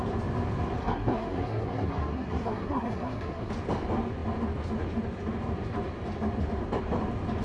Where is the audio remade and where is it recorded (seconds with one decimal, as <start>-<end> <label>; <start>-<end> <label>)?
0.0-0.8 recorded; 0.8-3.5 remade; 3.5-7.4 recorded

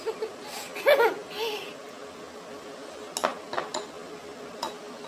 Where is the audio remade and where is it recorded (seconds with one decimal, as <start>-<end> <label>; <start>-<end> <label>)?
0.0-5.1 recorded

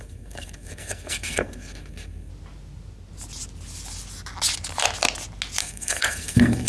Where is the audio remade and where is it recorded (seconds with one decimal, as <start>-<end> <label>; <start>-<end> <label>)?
0.0-2.3 remade; 2.3-5.6 recorded; 5.6-6.7 remade

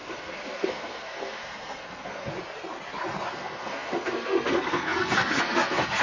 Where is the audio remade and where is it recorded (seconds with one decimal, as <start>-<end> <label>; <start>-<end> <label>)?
0.0-2.3 remade; 2.3-3.3 recorded; 3.3-6.0 remade

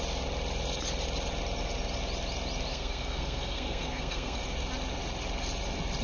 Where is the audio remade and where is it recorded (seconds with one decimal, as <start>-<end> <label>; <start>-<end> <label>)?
0.0-2.7 recorded; 2.7-4.4 remade; 4.4-6.0 recorded